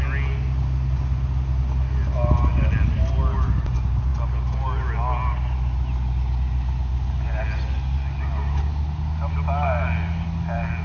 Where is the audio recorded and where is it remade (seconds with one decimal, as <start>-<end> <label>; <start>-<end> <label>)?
0.0-10.8 recorded